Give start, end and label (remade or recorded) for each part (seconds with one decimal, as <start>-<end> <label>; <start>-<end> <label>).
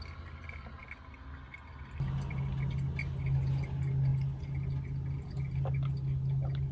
0.0-6.7 recorded